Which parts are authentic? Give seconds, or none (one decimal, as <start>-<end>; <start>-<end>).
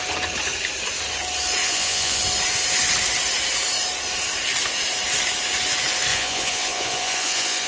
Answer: 0.0-1.6; 2.2-6.1